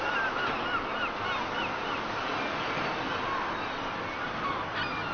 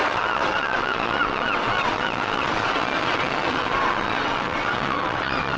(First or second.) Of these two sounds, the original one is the first